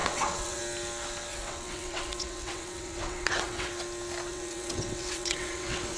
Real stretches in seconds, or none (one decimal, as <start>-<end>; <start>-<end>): 0.6-1.3; 3.7-4.3